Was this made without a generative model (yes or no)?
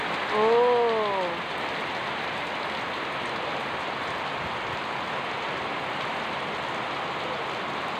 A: yes